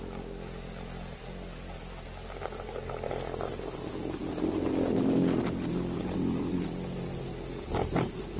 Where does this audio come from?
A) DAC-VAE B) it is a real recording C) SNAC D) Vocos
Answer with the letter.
B